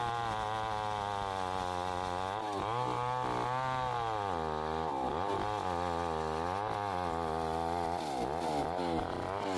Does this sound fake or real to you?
real